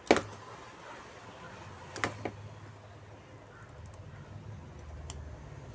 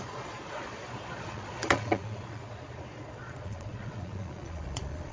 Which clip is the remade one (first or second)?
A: second